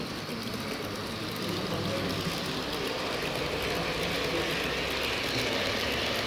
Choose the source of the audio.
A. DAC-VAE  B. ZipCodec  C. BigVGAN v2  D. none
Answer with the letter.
D